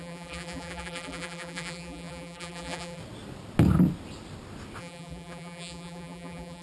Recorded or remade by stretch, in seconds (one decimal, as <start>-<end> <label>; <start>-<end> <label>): 0.0-3.0 remade; 3.0-4.8 recorded; 4.8-6.6 remade